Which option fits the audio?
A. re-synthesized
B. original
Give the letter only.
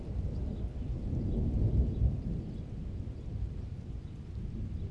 B